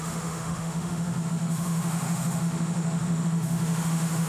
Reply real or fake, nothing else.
fake